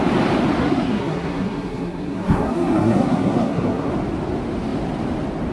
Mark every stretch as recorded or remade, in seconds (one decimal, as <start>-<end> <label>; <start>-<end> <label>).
0.0-0.6 recorded; 0.6-3.9 remade; 3.9-5.5 recorded